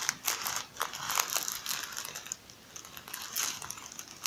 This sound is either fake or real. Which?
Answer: real